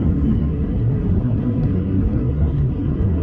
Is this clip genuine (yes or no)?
no